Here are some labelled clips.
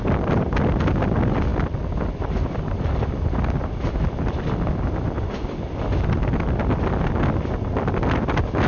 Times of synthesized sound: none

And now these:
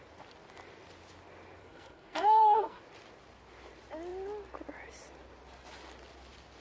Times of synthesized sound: 1.6-2.8

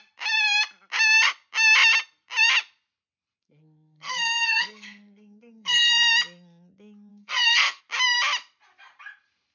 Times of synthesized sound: 3.4-5.9; 7.1-7.8

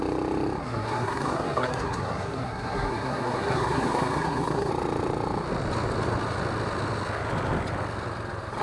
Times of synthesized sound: 0.6-4.7

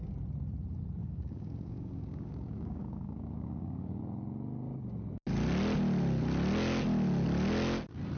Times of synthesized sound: 1.0-4.0

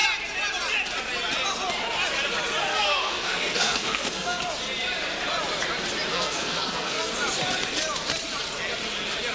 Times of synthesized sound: 2.7-4.4; 6.1-7.1

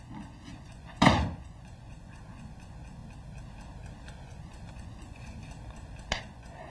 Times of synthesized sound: 0.0-3.0; 4.1-5.4; 6.2-6.7